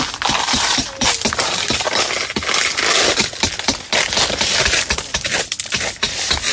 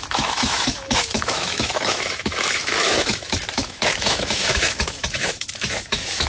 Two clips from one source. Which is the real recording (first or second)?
first